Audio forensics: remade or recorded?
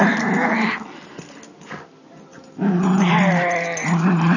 recorded